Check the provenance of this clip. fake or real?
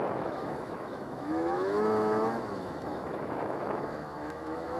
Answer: fake